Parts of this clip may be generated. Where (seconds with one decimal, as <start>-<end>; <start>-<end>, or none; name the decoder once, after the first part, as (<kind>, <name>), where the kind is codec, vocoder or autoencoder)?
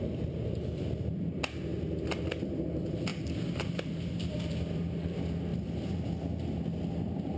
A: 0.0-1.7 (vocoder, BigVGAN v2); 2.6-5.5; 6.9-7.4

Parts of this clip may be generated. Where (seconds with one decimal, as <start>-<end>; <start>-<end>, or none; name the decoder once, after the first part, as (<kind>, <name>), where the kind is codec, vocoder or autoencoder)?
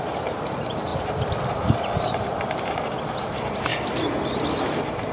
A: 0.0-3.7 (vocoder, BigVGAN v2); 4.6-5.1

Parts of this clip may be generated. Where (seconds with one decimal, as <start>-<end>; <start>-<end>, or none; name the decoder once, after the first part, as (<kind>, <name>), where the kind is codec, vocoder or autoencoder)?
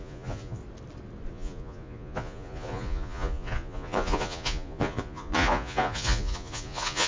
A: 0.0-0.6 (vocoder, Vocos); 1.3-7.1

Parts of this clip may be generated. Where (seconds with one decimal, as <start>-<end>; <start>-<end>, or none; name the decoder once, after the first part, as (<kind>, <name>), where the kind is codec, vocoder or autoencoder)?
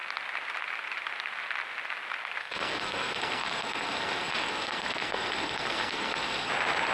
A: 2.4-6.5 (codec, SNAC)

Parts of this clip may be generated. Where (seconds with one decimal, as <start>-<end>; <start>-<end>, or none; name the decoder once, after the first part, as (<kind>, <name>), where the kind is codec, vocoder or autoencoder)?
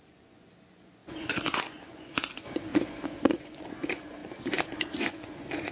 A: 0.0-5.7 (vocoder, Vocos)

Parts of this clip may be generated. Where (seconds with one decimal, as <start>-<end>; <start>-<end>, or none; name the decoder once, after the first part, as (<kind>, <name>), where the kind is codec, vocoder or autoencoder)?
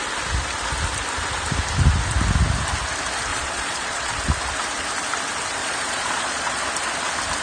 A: 3.3-4.1 (vocoder, Vocos); 5.6-6.6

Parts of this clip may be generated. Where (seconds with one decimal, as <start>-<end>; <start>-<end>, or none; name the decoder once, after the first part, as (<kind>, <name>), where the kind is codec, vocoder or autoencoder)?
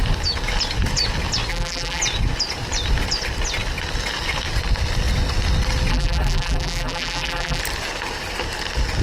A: 1.5-2.0 (vocoder, BigVGAN v2); 5.9-7.6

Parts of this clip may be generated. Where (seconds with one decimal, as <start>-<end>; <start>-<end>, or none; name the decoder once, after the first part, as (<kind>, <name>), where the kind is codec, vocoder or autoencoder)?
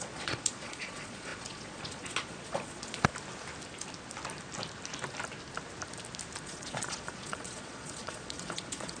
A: 0.0-3.1 (vocoder, Vocos); 6.4-9.0